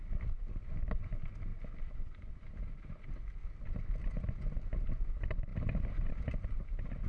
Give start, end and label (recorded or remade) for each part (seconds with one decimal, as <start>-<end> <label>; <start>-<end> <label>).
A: 0.0-5.5 recorded; 5.5-6.1 remade; 6.1-7.1 recorded